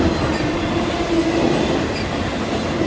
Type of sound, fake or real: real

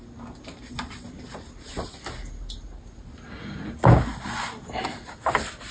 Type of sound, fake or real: real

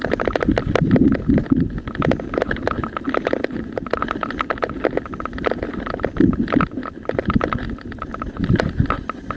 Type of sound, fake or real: real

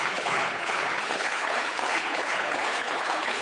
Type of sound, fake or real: fake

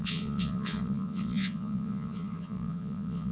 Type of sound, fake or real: fake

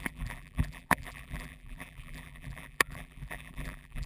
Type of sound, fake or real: fake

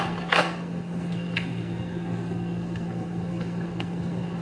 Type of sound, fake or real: fake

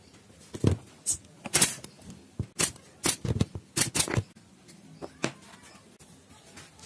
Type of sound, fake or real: real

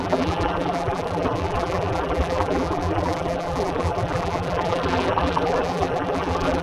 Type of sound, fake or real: fake